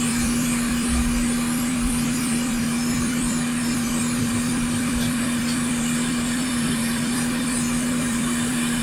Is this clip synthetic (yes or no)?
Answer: yes